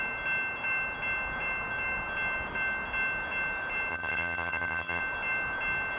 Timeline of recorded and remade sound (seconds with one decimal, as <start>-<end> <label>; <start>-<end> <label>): 0.0-3.9 recorded; 3.9-5.0 remade; 5.0-6.0 recorded